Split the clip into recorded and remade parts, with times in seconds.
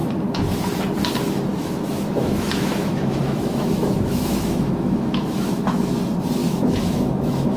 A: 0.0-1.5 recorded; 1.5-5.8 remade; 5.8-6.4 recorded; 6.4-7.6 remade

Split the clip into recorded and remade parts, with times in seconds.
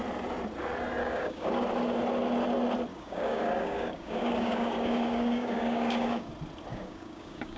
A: 0.0-1.0 recorded; 1.0-1.5 remade; 1.5-2.9 recorded; 2.9-6.3 remade; 6.3-6.7 recorded; 6.7-7.6 remade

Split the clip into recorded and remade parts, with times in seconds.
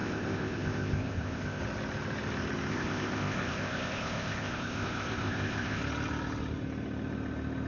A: 0.0-1.6 remade; 1.6-2.7 recorded; 2.7-5.8 remade; 5.8-7.7 recorded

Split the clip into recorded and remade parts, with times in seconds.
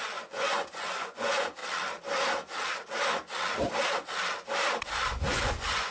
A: 0.0-1.6 remade; 1.6-5.1 recorded; 5.1-5.9 remade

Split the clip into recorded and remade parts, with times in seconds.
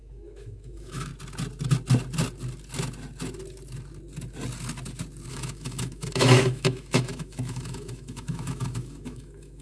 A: 0.0-1.1 remade; 1.1-5.3 recorded; 5.3-9.6 remade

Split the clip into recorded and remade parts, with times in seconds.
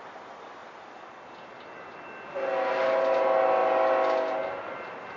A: 0.0-5.2 recorded